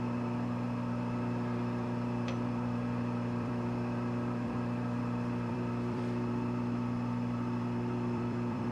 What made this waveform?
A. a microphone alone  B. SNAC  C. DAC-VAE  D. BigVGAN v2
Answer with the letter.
D